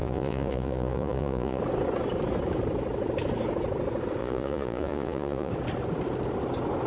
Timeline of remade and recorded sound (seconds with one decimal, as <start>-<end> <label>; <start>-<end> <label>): 0.0-1.6 remade; 1.6-4.2 recorded; 4.2-5.5 remade; 5.5-6.9 recorded